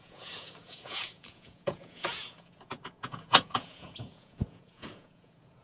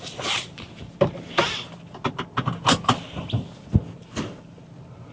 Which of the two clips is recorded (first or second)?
second